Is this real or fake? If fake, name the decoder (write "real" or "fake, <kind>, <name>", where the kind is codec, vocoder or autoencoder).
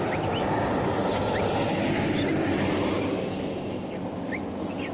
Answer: real